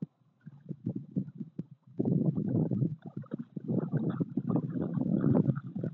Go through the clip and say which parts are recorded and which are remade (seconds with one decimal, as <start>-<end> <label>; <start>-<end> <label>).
0.0-2.9 remade; 2.9-4.8 recorded; 4.8-5.9 remade